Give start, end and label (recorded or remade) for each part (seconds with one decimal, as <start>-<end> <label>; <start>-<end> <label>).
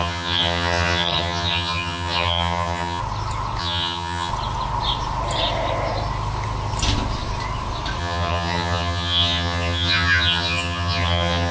0.0-3.0 remade; 3.0-3.6 recorded; 3.6-4.3 remade; 4.3-8.0 recorded; 8.0-11.5 remade